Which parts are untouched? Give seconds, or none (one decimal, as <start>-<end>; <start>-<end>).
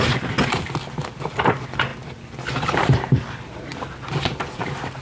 0.0-1.9; 2.4-5.0